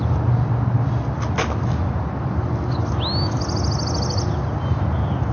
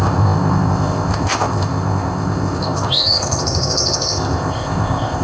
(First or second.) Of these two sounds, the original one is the first